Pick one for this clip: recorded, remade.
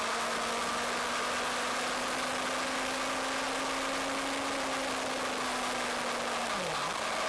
recorded